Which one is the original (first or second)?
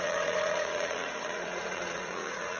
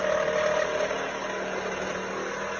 second